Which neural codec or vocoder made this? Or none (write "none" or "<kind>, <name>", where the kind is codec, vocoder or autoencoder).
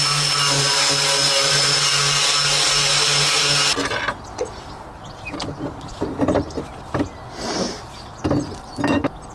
none